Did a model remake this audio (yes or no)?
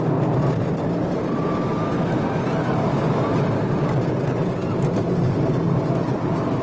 no